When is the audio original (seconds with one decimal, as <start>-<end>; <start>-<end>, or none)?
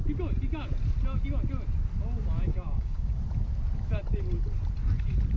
0.0-2.5; 3.2-5.4